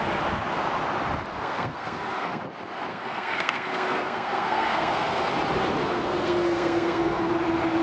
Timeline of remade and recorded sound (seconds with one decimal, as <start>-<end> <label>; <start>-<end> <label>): 0.0-1.3 recorded; 1.3-2.4 remade; 2.4-2.9 recorded; 2.9-5.3 remade; 5.3-5.8 recorded; 5.8-7.3 remade; 7.3-7.8 recorded

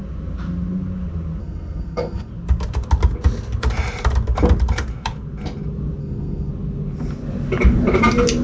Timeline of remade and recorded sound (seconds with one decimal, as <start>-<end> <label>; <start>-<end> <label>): 0.0-1.4 recorded; 1.4-2.3 remade; 2.3-6.0 recorded; 6.0-6.5 remade; 6.5-8.4 recorded

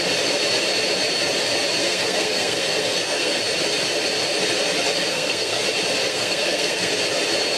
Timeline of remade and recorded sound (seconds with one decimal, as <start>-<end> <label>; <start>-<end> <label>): 0.0-1.8 recorded; 1.8-3.4 remade; 3.4-5.1 recorded; 5.1-5.6 remade; 5.6-6.1 recorded; 6.1-6.9 remade; 6.9-7.6 recorded

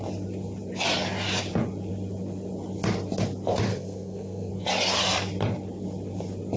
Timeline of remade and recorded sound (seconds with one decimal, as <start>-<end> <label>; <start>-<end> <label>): 0.0-3.7 recorded; 3.7-4.5 remade; 4.5-6.6 recorded

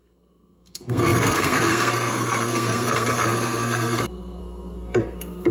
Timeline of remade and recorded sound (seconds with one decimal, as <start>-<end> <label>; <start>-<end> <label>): 0.0-5.5 remade

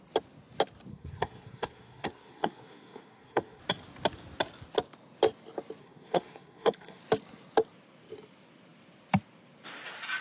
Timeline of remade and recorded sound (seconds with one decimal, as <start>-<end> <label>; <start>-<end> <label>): 0.0-0.9 recorded; 0.9-3.6 remade; 3.6-5.8 recorded; 5.8-7.0 remade; 7.0-10.2 recorded

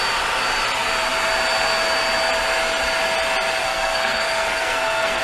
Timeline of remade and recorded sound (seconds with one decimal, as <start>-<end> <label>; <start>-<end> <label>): 0.0-3.6 recorded; 3.6-5.2 remade